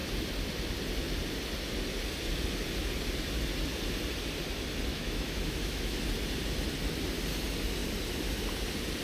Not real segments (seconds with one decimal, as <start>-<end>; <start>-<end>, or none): 4.9-6.0

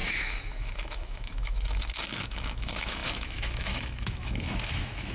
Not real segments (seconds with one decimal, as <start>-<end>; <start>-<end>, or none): 0.0-5.1

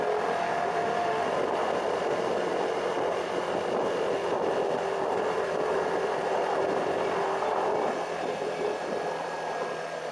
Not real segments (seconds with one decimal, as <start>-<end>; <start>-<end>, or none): 0.4-1.3

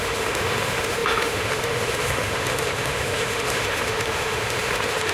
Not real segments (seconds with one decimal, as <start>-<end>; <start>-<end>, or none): 0.0-5.1

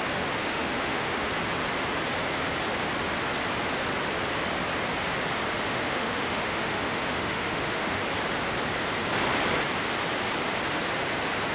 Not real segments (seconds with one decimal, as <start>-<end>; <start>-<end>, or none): 0.4-1.3; 5.7-8.0

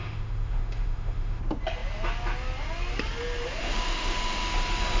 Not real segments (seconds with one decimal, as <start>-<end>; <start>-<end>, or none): 0.0-1.4; 3.6-4.5

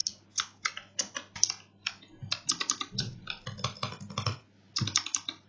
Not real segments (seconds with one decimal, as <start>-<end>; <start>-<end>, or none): none